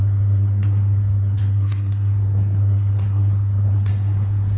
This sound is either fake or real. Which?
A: fake